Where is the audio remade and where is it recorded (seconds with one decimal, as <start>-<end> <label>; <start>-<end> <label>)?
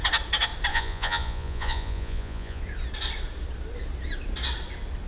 0.0-0.7 recorded; 0.7-2.6 remade; 2.6-5.1 recorded